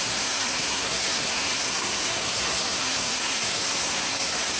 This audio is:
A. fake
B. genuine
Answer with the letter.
A